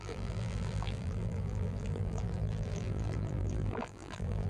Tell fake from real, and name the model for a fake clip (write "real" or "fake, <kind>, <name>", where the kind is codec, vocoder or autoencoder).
fake, vocoder, BigVGAN v2